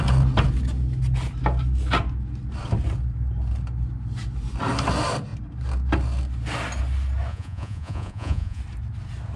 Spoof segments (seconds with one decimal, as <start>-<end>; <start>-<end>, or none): 7.3-8.6